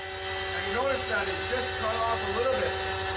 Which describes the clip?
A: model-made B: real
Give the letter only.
B